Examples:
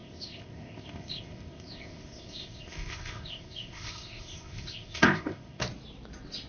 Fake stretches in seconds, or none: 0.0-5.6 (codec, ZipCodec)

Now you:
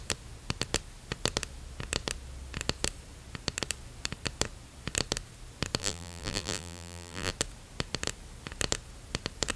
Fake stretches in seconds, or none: 5.8-7.3 (vocoder, BigVGAN v2)

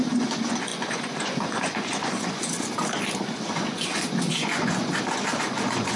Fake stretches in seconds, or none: 0.0-6.0 (vocoder, Vocos)